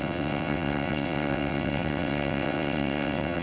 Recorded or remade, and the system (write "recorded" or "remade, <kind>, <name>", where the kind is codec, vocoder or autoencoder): remade, vocoder, WaveNeXt